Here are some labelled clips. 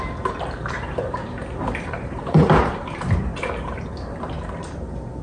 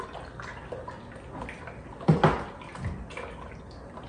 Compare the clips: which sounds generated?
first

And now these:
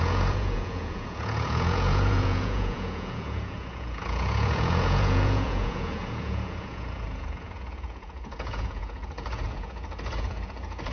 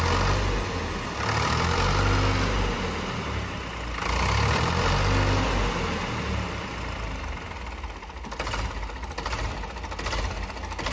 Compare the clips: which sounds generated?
first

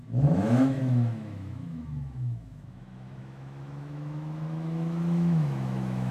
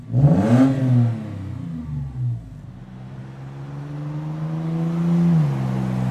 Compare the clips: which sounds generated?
first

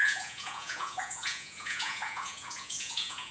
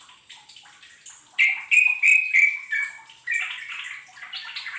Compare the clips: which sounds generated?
first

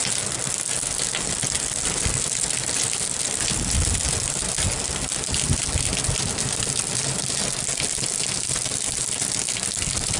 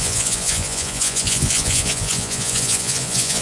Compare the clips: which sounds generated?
second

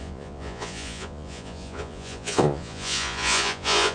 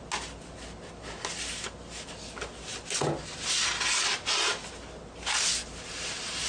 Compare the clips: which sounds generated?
first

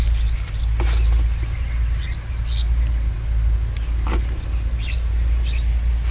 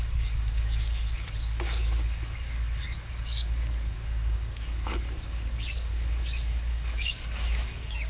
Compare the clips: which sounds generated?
second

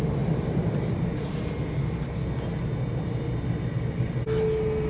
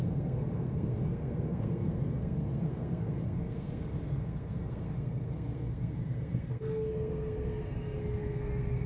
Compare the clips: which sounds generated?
second